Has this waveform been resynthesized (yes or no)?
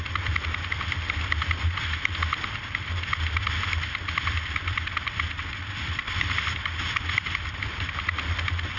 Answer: yes